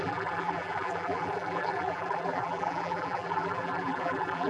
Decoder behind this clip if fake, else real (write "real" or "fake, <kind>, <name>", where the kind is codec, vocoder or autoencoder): fake, vocoder, BigVGAN v2